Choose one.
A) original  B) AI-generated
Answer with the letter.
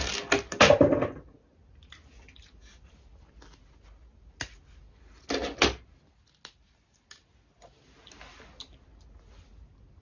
A